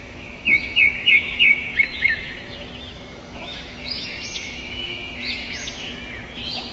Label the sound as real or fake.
fake